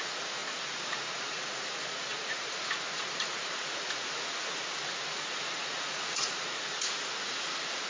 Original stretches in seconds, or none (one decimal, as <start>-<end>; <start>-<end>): none